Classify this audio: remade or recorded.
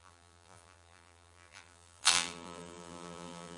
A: remade